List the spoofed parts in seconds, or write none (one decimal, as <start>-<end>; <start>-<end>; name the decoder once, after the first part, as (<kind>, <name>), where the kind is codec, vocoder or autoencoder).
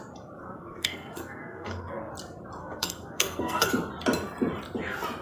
0.4-2.1 (codec, SNAC); 2.6-3.7